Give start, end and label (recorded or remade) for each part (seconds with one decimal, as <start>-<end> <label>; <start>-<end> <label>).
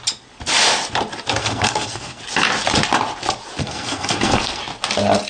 0.0-1.4 recorded; 1.4-2.2 remade; 2.2-3.6 recorded; 3.6-4.6 remade; 4.6-5.3 recorded